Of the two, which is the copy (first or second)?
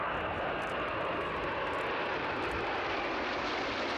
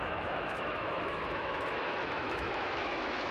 second